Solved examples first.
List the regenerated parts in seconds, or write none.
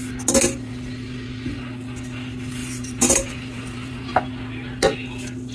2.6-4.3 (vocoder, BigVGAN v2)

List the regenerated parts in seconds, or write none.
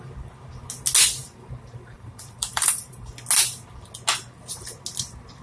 1.2-3.1 (vocoder, BigVGAN v2)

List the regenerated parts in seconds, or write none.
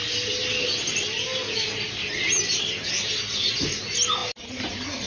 none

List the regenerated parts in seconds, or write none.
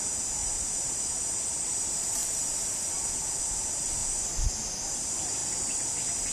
0.0-2.2 (vocoder, BigVGAN v2); 3.4-4.0; 4.7-5.4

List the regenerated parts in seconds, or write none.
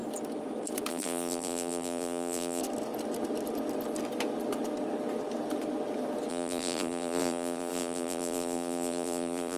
0.9-2.6 (vocoder, BigVGAN v2); 6.3-9.6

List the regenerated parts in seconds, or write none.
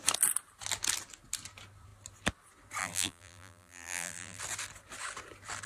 2.8-4.4 (vocoder, BigVGAN v2)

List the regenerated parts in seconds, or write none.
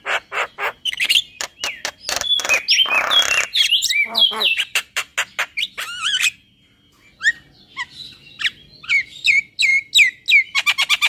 0.0-1.5 (vocoder, BigVGAN v2); 3.7-5.1; 8.9-9.7